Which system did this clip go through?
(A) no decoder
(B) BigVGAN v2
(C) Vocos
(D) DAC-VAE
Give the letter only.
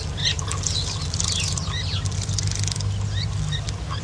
A